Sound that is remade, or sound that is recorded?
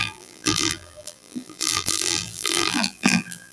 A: remade